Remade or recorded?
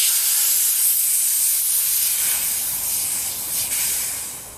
recorded